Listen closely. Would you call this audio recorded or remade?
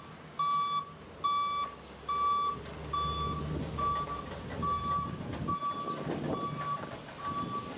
recorded